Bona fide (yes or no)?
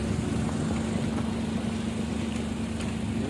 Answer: yes